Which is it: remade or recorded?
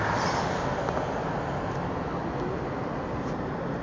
recorded